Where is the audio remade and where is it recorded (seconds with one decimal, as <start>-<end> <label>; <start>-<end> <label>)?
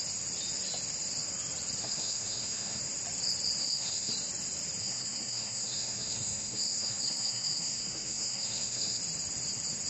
0.0-1.8 recorded; 1.8-2.8 remade; 2.8-3.6 recorded; 3.6-4.1 remade; 4.1-4.8 recorded; 4.8-9.0 remade; 9.0-9.9 recorded